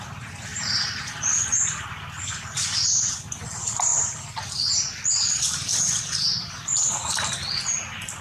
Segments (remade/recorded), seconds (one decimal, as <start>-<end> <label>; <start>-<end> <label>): 0.0-8.2 recorded